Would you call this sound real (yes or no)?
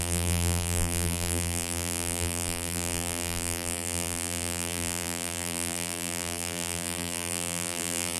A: no